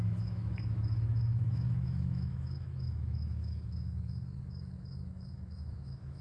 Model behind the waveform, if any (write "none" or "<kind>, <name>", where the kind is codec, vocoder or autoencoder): autoencoder, DAC-VAE